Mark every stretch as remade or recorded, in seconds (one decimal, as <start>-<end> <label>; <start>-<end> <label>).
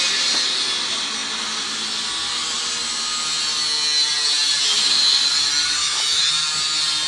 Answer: 0.0-5.8 recorded; 5.8-6.3 remade; 6.3-7.1 recorded